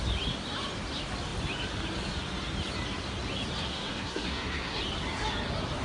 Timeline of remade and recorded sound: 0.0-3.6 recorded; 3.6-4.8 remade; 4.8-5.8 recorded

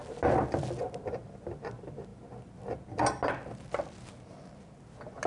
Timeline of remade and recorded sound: 0.0-5.3 recorded

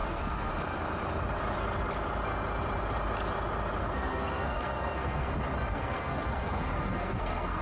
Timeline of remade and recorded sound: 0.0-0.5 remade; 0.5-3.8 recorded; 3.8-5.3 remade; 5.3-5.7 recorded; 5.7-7.6 remade

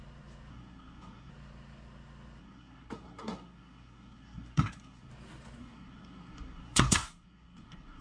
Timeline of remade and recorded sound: 0.0-0.5 recorded; 0.5-1.3 remade; 1.3-2.4 recorded; 2.4-5.1 remade; 5.1-5.6 recorded; 5.6-8.0 remade

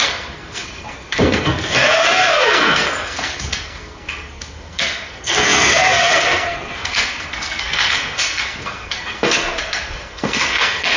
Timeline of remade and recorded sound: 0.0-11.0 remade

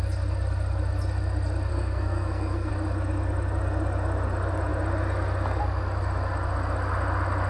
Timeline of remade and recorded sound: 0.0-1.7 recorded; 1.7-2.7 remade; 2.7-7.5 recorded